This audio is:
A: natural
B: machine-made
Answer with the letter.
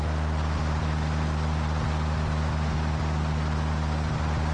A